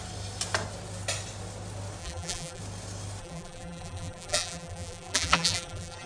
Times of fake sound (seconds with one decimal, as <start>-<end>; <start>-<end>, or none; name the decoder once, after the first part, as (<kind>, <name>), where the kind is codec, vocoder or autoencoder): 2.0-2.6 (vocoder, BigVGAN v2); 3.2-6.1